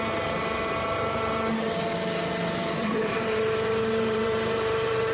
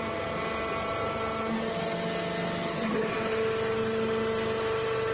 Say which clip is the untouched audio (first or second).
second